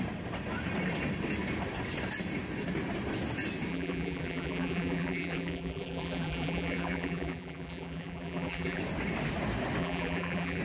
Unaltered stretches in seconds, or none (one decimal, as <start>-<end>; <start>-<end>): 0.0-3.7; 8.8-9.8